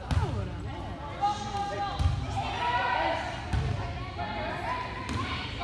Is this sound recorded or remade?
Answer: recorded